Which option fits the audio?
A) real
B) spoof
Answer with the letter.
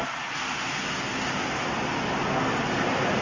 A